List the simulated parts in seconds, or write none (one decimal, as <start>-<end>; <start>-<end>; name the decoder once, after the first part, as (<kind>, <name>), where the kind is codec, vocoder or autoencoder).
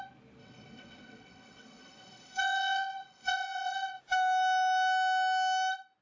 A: 0.4-4.0 (vocoder, WaveNeXt)